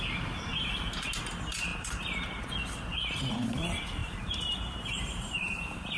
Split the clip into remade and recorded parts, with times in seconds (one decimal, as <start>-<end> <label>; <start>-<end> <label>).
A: 0.0-1.7 recorded; 1.7-2.5 remade; 2.5-4.0 recorded; 4.0-6.0 remade